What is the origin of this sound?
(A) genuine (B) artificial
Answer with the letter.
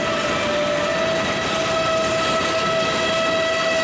A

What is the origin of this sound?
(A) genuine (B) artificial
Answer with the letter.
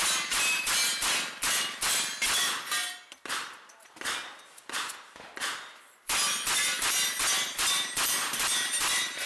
A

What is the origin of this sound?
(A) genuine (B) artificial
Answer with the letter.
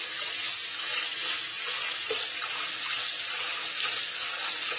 A